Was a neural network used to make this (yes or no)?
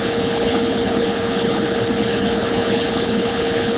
yes